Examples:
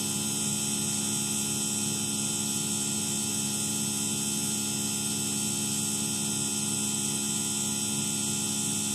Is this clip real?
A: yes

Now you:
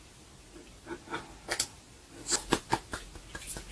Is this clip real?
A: yes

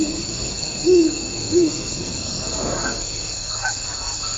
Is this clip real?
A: no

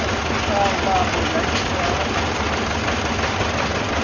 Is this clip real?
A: yes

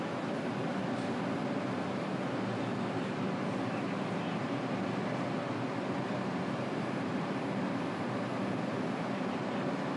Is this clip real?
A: yes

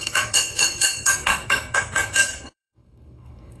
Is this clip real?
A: no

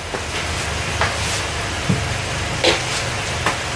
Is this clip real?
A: yes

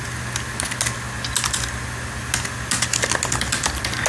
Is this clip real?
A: yes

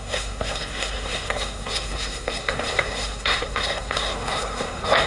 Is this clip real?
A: no